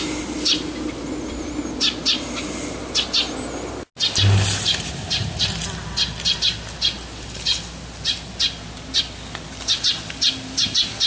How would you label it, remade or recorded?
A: recorded